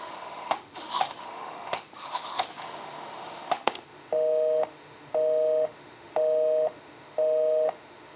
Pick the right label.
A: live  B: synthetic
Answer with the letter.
B